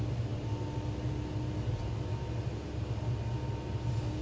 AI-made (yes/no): no